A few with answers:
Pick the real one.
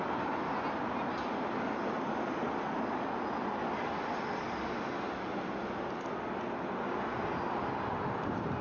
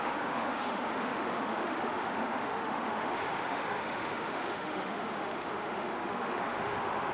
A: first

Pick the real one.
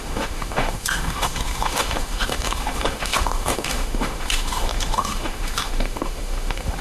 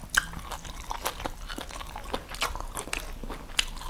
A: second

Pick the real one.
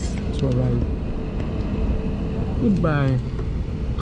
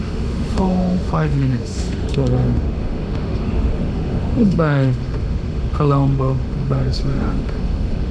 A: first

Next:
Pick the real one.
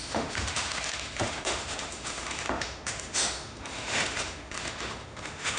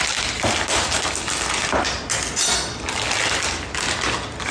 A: second